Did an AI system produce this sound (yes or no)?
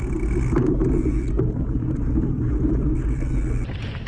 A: no